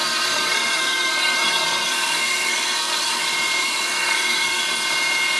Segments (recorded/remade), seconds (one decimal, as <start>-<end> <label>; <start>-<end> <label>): 0.0-3.2 remade; 3.2-3.6 recorded; 3.6-4.6 remade; 4.6-5.4 recorded